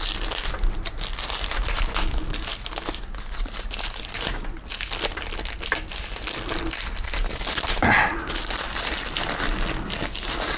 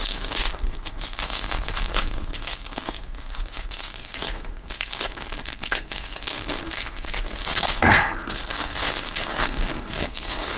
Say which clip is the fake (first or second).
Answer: second